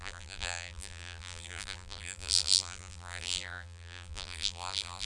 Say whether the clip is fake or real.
fake